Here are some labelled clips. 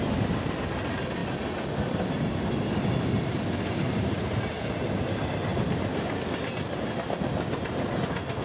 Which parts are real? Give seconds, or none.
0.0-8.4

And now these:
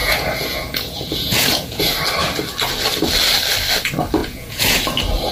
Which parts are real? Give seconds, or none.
1.8-4.2; 4.8-5.3